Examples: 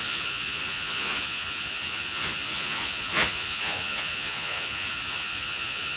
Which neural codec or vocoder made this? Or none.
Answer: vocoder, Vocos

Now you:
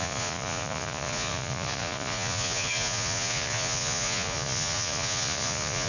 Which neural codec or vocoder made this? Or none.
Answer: vocoder, Vocos